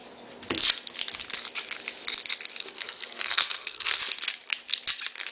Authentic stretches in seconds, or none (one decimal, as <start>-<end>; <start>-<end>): 0.0-2.6; 4.0-5.3